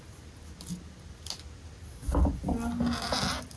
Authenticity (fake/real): real